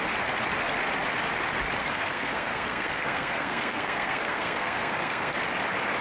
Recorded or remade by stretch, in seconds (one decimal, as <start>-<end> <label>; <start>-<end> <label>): 0.0-1.8 recorded; 1.8-5.4 remade; 5.4-6.0 recorded